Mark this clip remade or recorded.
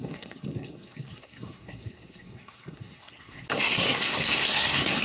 remade